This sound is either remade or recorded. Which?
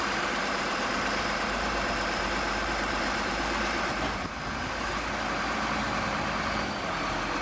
remade